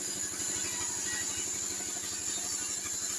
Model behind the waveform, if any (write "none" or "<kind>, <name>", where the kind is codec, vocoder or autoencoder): none